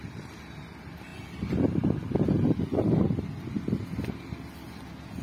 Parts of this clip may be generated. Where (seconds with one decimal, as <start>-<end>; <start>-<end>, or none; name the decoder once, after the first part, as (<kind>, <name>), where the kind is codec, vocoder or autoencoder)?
none